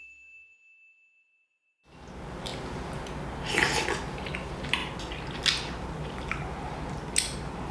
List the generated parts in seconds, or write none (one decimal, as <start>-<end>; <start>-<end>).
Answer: none